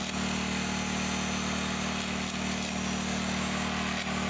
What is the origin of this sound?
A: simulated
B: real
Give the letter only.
B